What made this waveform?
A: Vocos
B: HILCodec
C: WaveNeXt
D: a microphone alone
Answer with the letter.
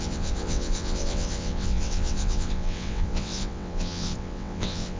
C